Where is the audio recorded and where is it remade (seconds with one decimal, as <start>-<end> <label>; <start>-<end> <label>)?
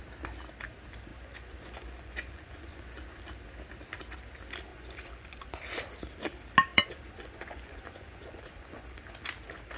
0.0-1.1 recorded; 1.1-3.2 remade; 3.2-4.7 recorded; 4.7-5.6 remade; 5.6-6.7 recorded; 6.7-9.0 remade; 9.0-9.8 recorded